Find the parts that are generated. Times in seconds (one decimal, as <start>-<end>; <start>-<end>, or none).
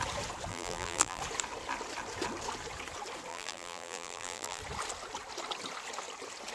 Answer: 0.5-1.2; 3.3-4.6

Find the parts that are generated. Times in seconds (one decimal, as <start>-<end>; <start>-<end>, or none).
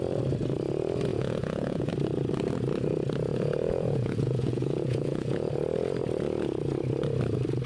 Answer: 1.1-1.9; 3.3-5.5